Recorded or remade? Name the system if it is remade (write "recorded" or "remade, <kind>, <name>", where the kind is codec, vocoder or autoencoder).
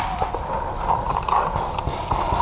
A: recorded